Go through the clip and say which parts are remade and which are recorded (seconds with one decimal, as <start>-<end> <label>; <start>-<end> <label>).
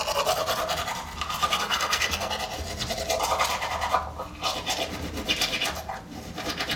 0.0-1.4 recorded; 1.4-2.3 remade; 2.3-6.8 recorded